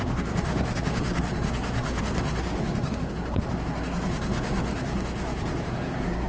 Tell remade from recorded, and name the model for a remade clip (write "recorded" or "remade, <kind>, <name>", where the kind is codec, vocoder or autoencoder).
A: remade, codec, SNAC